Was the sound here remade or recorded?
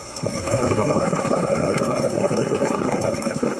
remade